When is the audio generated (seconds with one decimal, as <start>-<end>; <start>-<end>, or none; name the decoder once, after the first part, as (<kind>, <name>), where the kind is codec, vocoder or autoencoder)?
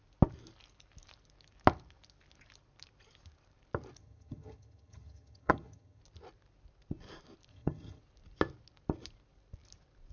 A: 4.0-6.0 (vocoder, HiFi-GAN); 7.5-8.0